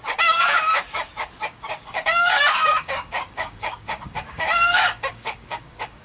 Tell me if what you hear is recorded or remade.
remade